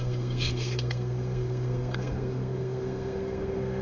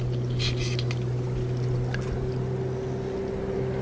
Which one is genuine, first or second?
second